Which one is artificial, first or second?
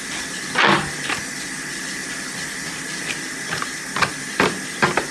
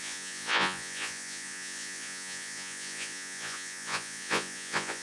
second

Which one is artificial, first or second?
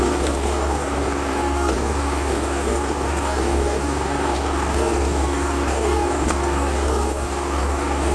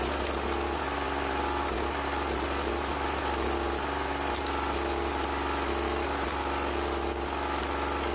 first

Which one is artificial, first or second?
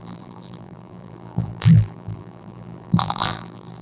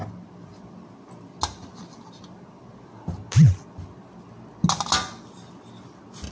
first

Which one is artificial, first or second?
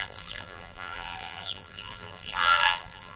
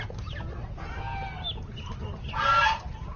first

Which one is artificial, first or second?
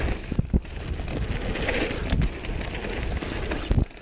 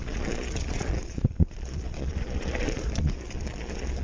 second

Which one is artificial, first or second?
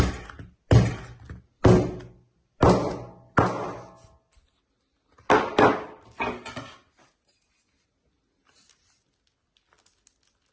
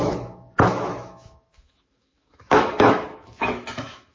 second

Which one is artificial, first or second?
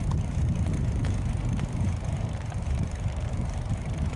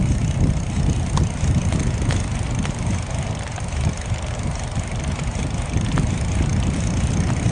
first